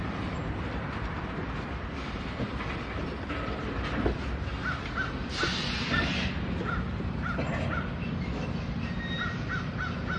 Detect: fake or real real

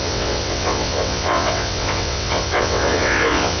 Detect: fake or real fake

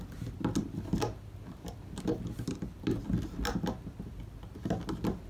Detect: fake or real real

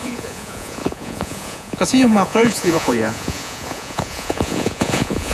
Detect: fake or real fake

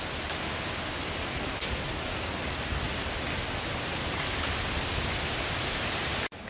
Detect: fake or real real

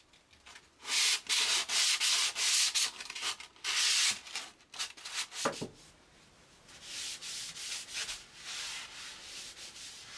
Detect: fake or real real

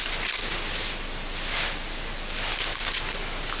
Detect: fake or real real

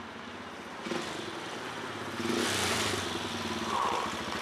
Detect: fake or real real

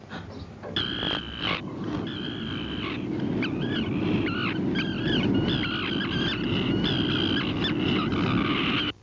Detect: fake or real real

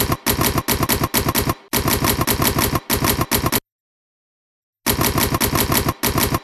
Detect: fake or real real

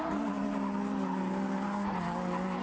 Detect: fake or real real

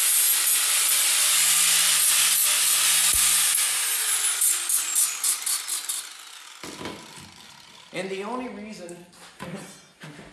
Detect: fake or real real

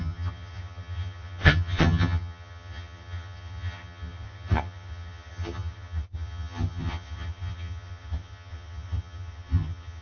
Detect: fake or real fake